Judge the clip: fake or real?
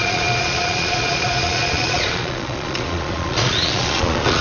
fake